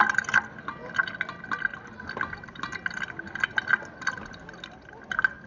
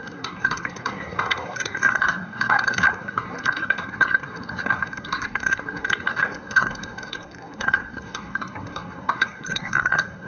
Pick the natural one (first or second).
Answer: first